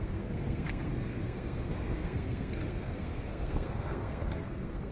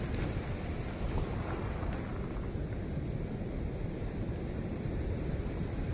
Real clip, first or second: second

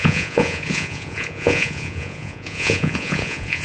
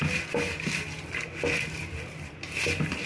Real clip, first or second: second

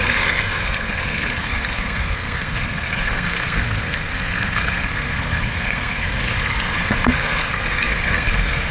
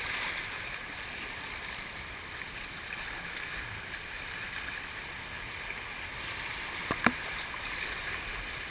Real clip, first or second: second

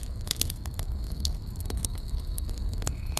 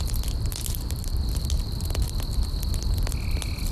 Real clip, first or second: second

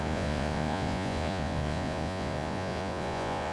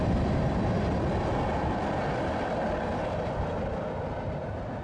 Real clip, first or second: second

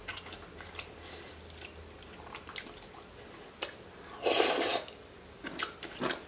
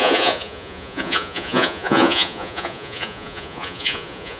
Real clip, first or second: first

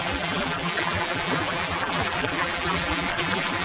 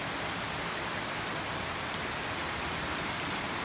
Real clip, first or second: second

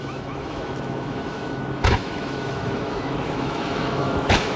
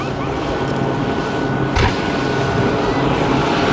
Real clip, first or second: second